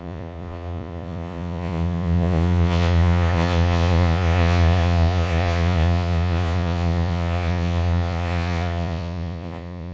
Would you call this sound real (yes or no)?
no